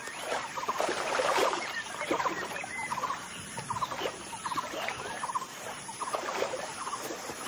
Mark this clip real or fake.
fake